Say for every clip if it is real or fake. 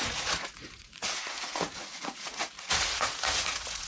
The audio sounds fake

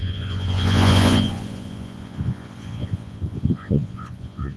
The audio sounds fake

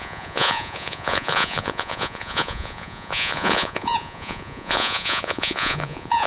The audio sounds fake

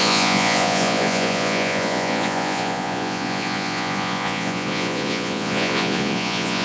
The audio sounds fake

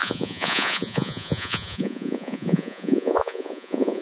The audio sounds fake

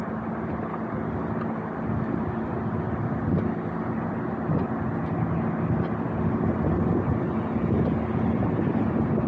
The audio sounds real